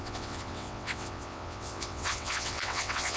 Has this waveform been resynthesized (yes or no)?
yes